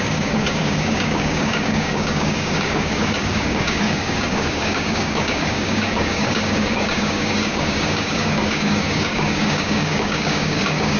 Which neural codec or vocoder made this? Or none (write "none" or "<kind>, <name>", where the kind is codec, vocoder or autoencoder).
codec, DAC